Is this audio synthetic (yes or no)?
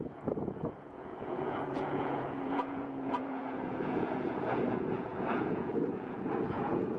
yes